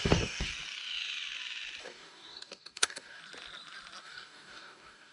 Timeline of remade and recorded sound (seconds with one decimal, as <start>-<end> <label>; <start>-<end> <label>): 0.0-0.5 remade; 0.5-1.8 recorded; 1.8-3.2 remade; 3.2-4.0 recorded; 4.0-5.1 remade